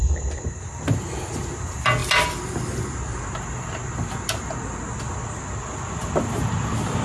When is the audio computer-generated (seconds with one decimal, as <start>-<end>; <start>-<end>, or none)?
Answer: none